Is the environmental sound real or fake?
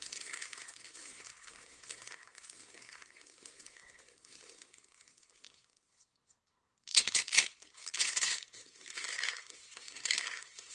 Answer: fake